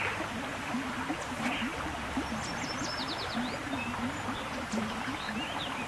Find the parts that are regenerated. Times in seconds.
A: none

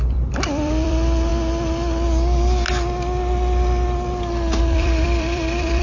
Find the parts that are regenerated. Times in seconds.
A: 0.0-1.3 (vocoder, BigVGAN v2); 4.6-5.8

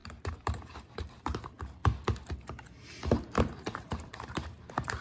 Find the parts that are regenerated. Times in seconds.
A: 0.0-1.8 (vocoder, BigVGAN v2); 3.4-5.0

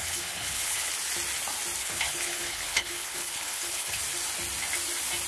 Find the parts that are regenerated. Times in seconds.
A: 0.0-0.9 (codec, HILCodec); 1.8-4.0

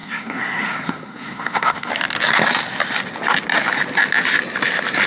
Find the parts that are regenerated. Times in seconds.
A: 0.0-1.9 (codec, SNAC)

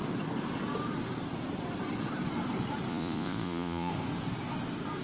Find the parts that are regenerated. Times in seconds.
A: 2.9-3.9 (vocoder, Vocos)

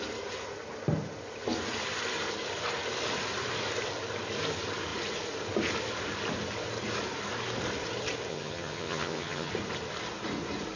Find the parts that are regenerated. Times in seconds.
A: 8.3-9.5 (vocoder, HiFi-GAN)